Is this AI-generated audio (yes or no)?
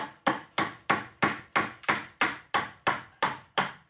no